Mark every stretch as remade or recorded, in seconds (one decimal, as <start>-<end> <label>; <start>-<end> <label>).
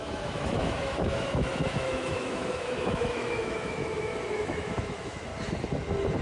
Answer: 0.0-5.3 remade; 5.3-6.2 recorded